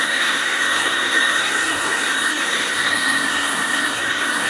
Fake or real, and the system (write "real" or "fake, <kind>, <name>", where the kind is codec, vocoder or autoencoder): fake, codec, SNAC